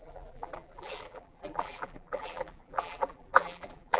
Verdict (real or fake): fake